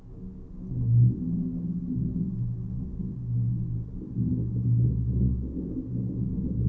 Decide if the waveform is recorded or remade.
recorded